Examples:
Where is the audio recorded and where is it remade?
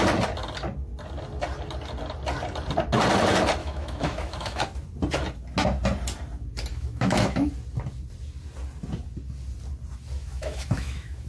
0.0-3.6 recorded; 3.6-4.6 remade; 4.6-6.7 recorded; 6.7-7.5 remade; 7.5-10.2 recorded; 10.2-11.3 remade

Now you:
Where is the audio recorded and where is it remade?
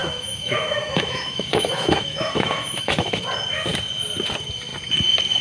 0.0-3.2 remade; 3.2-5.4 recorded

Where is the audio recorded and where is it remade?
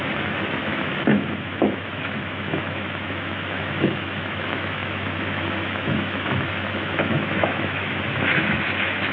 0.0-9.1 remade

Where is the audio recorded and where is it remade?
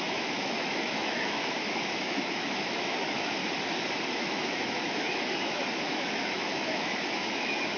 0.0-3.4 remade; 3.4-4.1 recorded; 4.1-7.8 remade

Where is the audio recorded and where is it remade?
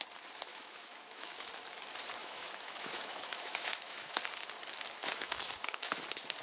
0.0-0.5 recorded; 0.5-1.5 remade; 1.5-2.2 recorded; 2.2-4.2 remade; 4.2-5.0 recorded; 5.0-5.9 remade; 5.9-6.4 recorded